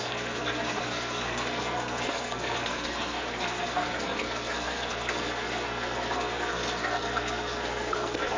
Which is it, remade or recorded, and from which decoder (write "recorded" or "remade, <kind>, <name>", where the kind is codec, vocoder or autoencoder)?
remade, codec, SNAC